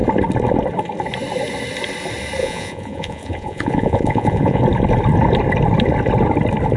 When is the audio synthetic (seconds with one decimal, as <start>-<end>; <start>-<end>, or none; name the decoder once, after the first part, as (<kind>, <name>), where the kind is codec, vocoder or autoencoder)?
2.4-4.6 (vocoder, Vocos)